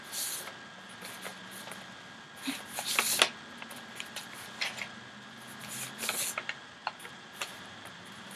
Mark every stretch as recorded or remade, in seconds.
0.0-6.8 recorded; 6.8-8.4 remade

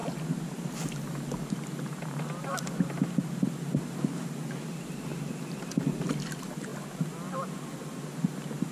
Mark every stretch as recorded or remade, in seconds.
0.0-8.7 recorded

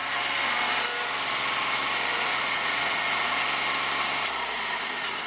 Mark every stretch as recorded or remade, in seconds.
0.0-2.1 recorded; 2.1-3.4 remade; 3.4-5.3 recorded